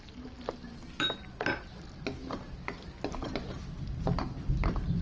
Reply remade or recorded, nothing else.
recorded